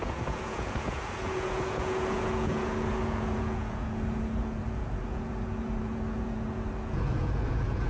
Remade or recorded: remade